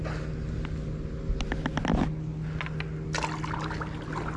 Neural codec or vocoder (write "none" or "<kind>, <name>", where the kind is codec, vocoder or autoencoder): none